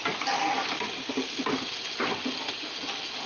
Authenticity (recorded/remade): recorded